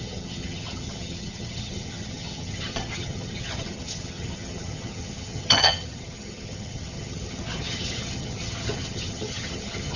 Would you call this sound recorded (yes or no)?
no